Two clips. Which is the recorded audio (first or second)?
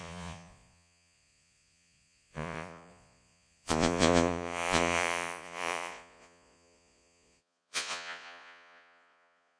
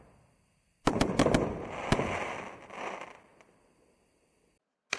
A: second